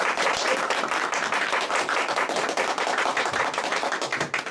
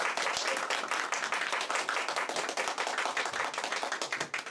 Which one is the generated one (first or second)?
first